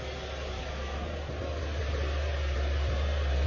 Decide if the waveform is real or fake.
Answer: real